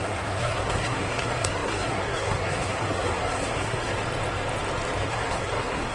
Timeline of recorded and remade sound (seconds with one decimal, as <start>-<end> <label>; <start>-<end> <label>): 0.0-3.9 remade; 3.9-5.1 recorded; 5.1-5.9 remade